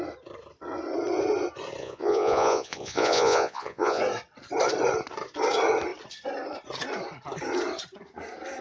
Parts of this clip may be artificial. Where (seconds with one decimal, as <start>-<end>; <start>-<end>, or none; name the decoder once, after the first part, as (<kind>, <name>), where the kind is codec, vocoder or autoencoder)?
1.8-4.0 (vocoder, Vocos)